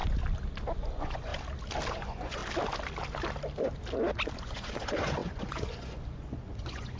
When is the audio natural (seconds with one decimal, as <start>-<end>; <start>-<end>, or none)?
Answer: 0.0-0.9; 1.3-1.9; 2.4-4.4